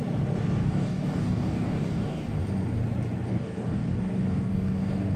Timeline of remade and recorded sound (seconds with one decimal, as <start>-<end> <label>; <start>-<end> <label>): 0.0-0.6 recorded; 0.6-2.4 remade; 2.4-3.3 recorded; 3.3-5.2 remade